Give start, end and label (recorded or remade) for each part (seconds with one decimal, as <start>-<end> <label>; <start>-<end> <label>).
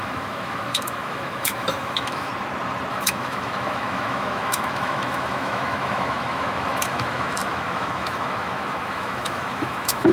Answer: 0.0-2.3 remade; 2.3-2.9 recorded; 2.9-10.1 remade